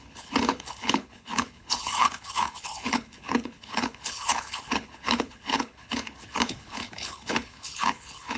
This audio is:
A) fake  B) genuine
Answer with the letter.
A